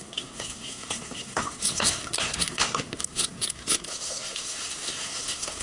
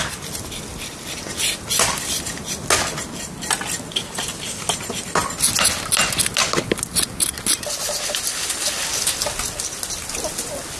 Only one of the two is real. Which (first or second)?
second